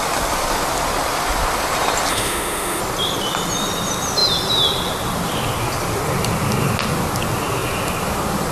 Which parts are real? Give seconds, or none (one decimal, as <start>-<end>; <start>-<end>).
0.0-2.1; 2.8-8.5